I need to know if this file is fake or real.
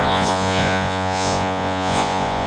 fake